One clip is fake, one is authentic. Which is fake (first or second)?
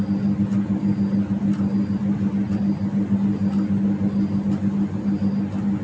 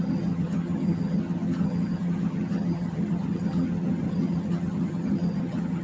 second